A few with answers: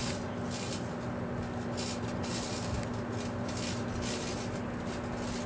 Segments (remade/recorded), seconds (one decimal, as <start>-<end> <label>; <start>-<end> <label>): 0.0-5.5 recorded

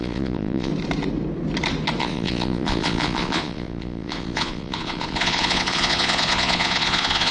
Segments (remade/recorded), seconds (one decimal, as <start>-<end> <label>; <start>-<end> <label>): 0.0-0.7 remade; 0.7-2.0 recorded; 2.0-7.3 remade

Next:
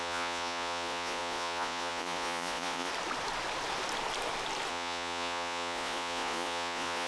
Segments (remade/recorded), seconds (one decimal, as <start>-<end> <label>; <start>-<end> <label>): 0.0-2.9 remade; 2.9-4.7 recorded; 4.7-7.1 remade

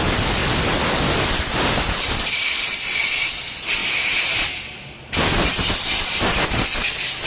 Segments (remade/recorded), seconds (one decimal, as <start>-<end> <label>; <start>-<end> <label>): 0.0-2.9 recorded; 2.9-3.4 remade; 3.4-7.3 recorded

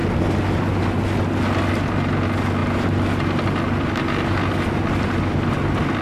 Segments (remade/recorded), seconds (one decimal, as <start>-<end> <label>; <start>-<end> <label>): 0.0-6.0 recorded

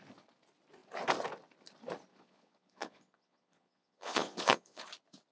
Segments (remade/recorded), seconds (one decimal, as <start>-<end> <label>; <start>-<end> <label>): 0.0-2.1 recorded; 2.1-4.8 remade; 4.8-5.3 recorded

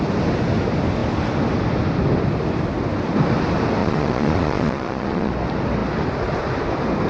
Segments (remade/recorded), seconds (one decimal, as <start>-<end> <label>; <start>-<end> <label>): 0.0-3.8 recorded; 3.8-5.3 remade; 5.3-7.1 recorded

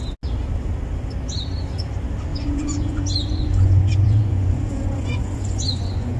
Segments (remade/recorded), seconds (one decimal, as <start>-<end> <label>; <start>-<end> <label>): 0.0-2.3 recorded; 2.3-6.2 remade